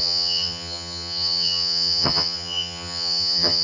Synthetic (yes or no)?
yes